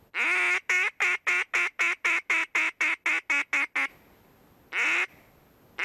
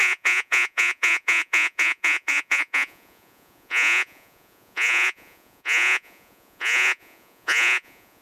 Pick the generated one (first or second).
second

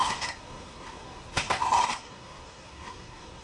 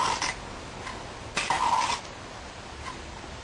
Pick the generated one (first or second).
first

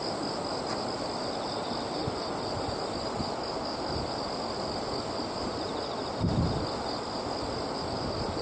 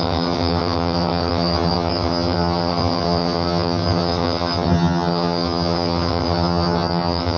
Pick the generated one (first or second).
second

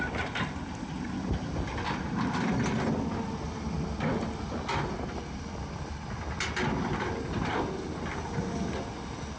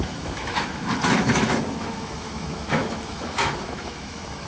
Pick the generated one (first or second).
second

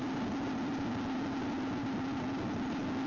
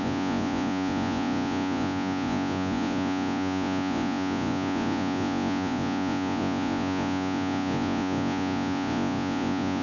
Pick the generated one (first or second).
second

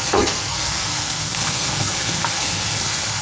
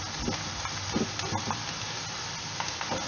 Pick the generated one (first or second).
first